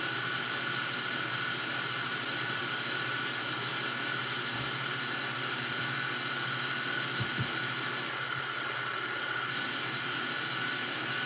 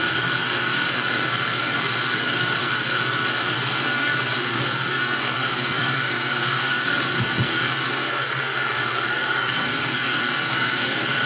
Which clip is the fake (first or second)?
second